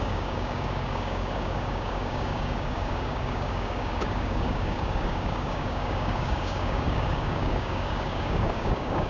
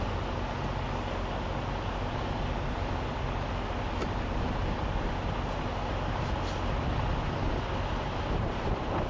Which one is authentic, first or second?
second